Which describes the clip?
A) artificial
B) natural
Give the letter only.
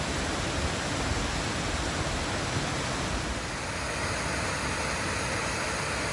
B